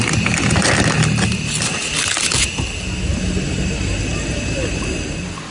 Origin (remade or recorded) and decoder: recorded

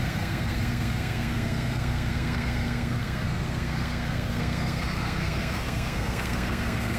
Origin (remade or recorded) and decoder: remade, codec, SNAC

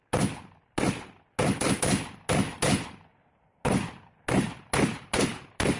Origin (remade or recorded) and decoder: recorded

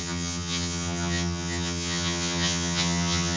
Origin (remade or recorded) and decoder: remade, vocoder, HiFi-GAN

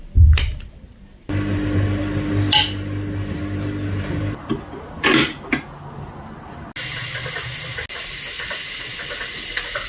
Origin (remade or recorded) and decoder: recorded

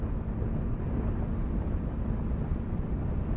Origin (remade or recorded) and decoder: recorded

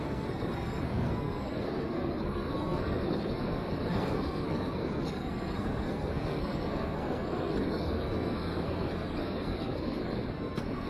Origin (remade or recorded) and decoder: remade, codec, SNAC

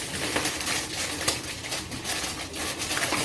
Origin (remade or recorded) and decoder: recorded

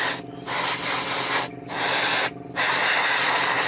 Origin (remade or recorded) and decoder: recorded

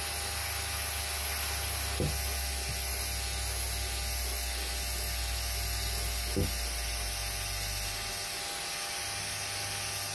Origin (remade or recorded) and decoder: recorded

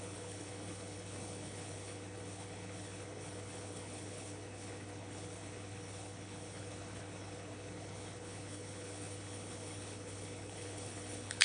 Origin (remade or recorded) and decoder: remade, codec, HILCodec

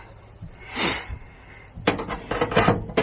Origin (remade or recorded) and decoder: recorded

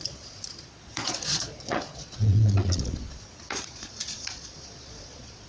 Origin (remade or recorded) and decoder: remade, vocoder, Vocos